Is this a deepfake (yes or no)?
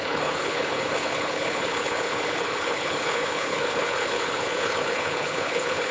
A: yes